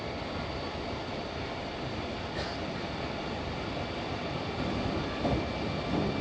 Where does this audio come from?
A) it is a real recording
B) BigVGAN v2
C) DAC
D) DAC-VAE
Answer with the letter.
B